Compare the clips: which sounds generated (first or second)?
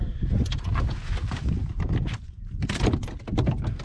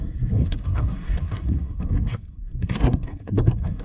second